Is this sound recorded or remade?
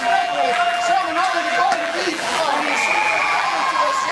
remade